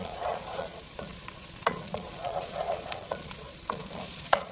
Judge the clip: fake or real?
fake